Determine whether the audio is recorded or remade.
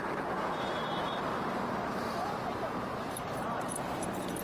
remade